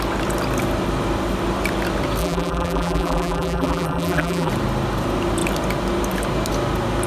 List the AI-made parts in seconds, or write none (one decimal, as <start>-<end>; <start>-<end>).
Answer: 2.2-4.5